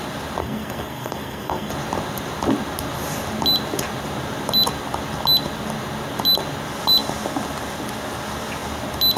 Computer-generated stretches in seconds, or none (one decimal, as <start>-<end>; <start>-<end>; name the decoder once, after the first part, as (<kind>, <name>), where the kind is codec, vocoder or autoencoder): 0.4-1.7 (codec, SNAC)